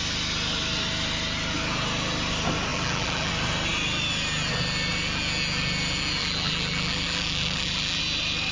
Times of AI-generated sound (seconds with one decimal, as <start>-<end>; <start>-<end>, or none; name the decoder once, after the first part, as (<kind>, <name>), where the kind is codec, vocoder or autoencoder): 2.7-3.3 (vocoder, BigVGAN v2); 6.2-8.0